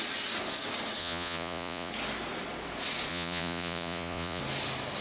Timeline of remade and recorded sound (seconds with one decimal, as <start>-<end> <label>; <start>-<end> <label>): 0.0-1.0 recorded; 1.0-1.9 remade; 1.9-3.1 recorded; 3.1-4.4 remade; 4.4-5.0 recorded

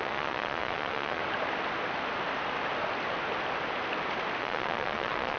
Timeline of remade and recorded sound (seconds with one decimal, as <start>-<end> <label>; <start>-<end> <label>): 0.0-1.2 remade; 1.2-4.4 recorded; 4.4-5.4 remade

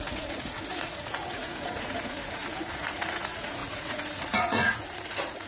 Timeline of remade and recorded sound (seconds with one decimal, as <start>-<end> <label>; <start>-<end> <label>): 0.0-5.5 remade

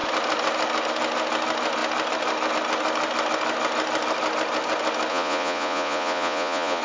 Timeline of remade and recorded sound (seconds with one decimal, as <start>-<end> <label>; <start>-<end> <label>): 0.0-5.1 recorded; 5.1-6.8 remade